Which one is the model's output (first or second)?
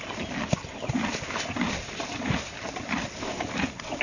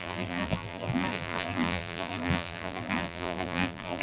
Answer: second